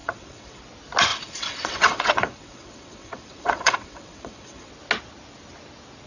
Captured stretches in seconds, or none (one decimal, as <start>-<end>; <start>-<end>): 0.6-1.1; 4.7-6.1

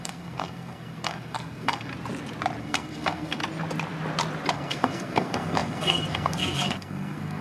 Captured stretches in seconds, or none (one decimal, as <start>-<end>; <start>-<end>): 1.9-2.6; 3.4-4.5